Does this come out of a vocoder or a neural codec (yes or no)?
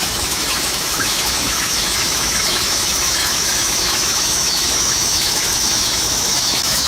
yes